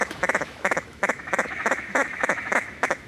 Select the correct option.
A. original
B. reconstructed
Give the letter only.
B